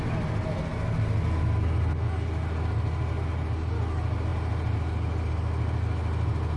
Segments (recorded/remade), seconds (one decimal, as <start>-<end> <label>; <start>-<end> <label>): 0.0-6.6 recorded

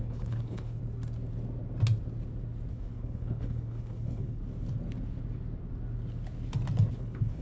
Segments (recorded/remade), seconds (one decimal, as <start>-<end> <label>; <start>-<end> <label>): 0.0-0.8 remade; 0.8-2.7 recorded; 2.7-4.4 remade; 4.4-6.9 recorded; 6.9-7.4 remade

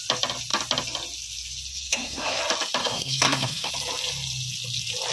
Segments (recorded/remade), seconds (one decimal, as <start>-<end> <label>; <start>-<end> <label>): 0.0-1.7 recorded; 1.7-2.4 remade; 2.4-2.8 recorded; 2.8-3.7 remade; 3.7-5.1 recorded

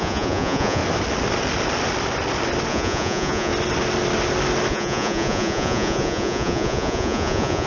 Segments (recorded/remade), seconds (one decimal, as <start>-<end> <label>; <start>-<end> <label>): 0.0-0.8 remade; 0.8-2.7 recorded; 2.7-3.5 remade; 3.5-4.7 recorded; 4.7-7.7 remade

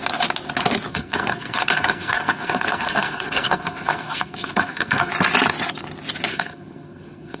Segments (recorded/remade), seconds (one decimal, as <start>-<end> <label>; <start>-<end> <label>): 0.0-0.9 recorded; 0.9-5.1 remade; 5.1-6.3 recorded; 6.3-7.4 remade